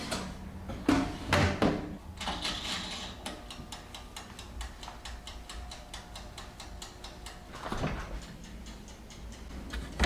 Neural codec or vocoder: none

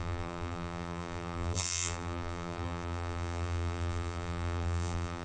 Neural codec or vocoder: vocoder, BigVGAN v2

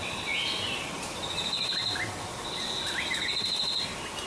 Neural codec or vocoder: none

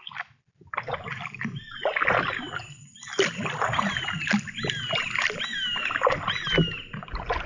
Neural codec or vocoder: none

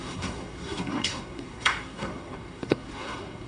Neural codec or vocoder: codec, SNAC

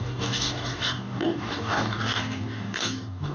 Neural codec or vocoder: codec, DAC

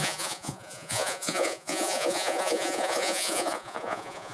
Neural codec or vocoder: vocoder, Vocos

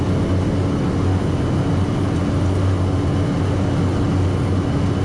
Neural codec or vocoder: none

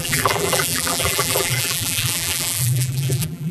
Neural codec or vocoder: vocoder, BigVGAN v2